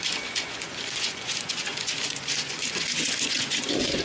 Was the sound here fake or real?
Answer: fake